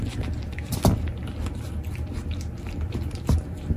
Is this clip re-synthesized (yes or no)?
no